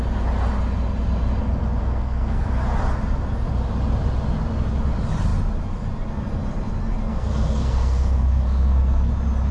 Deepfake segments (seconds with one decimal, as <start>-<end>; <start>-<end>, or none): 1.8-2.5; 7.1-9.1